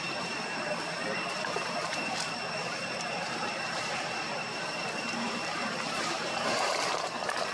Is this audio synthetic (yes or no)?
yes